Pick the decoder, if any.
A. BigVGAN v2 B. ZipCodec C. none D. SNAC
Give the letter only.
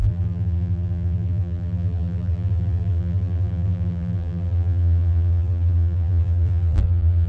A